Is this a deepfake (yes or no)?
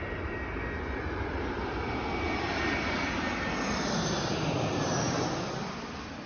no